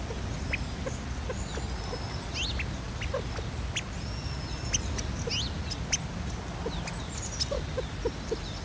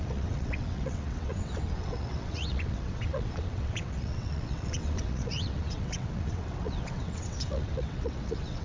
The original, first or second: first